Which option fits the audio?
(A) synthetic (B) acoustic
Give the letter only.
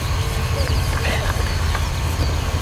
B